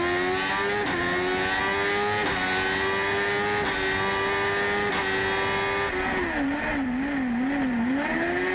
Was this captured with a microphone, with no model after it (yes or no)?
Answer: yes